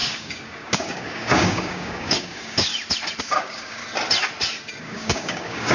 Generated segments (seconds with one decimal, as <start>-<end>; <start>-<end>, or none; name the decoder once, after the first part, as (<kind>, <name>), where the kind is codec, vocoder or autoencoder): 0.0-2.7 (codec, DAC); 3.2-3.8; 4.8-5.7